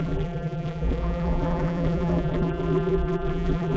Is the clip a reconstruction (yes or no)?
yes